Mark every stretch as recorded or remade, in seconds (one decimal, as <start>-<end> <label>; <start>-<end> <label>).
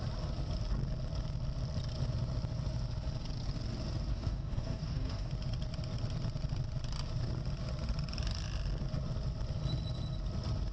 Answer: 0.0-4.1 recorded; 4.1-5.3 remade; 5.3-10.7 recorded